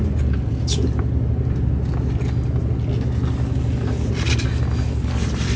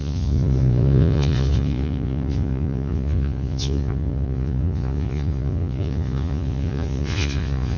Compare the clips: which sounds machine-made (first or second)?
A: second